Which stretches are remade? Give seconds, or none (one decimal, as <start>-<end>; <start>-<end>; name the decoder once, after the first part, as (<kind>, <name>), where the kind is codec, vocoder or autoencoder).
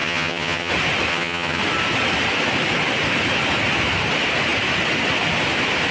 0.0-0.7 (vocoder, HiFi-GAN); 1.1-1.6